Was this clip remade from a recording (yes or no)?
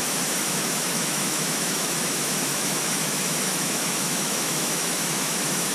yes